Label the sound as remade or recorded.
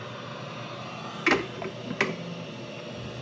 recorded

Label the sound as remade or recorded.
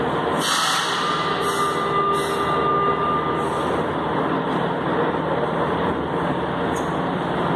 recorded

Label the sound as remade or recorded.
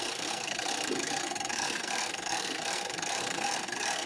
remade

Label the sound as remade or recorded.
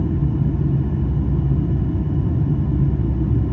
recorded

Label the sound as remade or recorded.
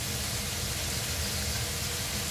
recorded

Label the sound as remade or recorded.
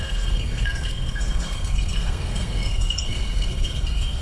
remade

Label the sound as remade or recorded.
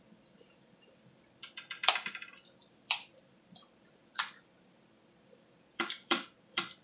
remade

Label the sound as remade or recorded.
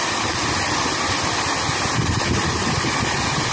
recorded